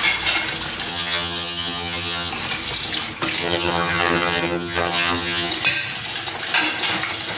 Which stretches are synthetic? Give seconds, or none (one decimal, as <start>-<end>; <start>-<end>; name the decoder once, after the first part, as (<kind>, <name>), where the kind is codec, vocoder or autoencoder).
0.9-2.3 (vocoder, HiFi-GAN); 3.4-5.5